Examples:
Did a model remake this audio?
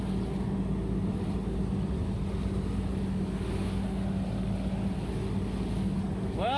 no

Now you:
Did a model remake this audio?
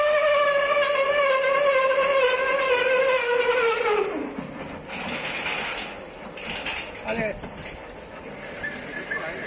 no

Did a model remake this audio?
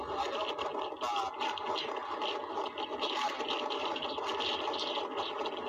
no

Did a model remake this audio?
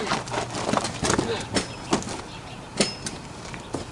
no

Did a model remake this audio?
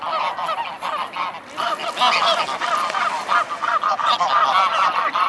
no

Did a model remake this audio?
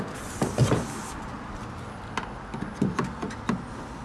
no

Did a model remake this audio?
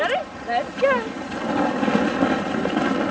no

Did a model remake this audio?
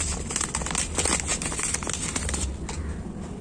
no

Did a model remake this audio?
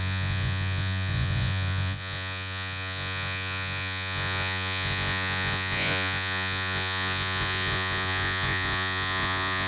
yes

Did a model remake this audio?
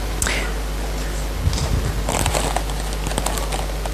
no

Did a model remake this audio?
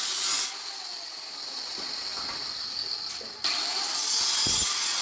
no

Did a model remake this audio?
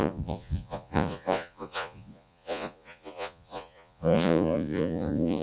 yes